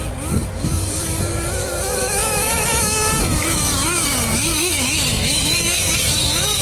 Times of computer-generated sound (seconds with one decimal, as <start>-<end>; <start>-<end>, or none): 0.0-6.6